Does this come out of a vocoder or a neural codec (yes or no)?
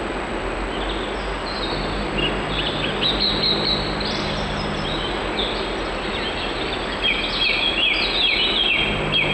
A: no